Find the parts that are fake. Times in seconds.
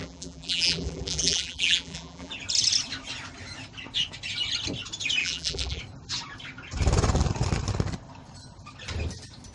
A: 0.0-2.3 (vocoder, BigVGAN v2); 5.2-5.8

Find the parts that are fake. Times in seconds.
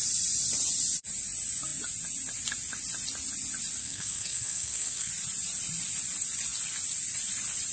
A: 3.8-5.1 (codec, SNAC)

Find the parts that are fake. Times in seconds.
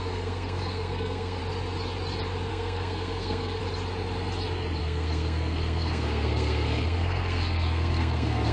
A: 0.0-1.4 (codec, SNAC); 2.5-3.6; 4.8-8.5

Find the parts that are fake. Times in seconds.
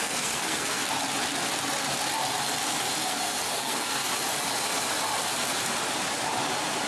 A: 0.0-0.8 (codec, SNAC); 3.0-4.1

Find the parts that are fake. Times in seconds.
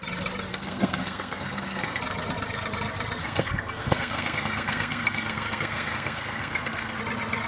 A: 0.5-2.0 (codec, SNAC); 3.2-7.0